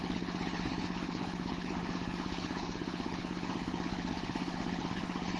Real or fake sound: fake